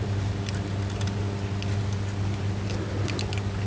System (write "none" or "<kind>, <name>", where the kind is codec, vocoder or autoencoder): none